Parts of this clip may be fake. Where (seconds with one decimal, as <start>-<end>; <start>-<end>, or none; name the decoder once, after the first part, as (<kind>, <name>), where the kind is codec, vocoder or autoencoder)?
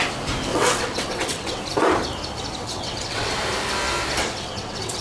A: 0.5-1.6 (vocoder, WaveNeXt); 2.6-3.3; 4.2-5.0